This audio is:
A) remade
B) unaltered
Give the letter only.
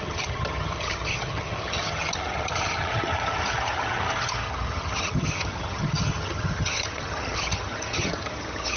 A